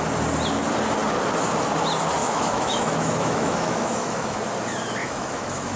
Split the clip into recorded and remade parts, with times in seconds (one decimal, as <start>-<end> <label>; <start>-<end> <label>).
0.0-2.2 recorded; 2.2-4.4 remade; 4.4-5.0 recorded; 5.0-5.8 remade